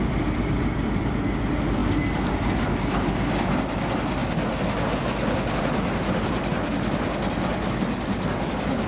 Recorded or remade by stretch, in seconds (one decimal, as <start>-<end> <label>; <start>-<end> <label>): 0.0-8.9 recorded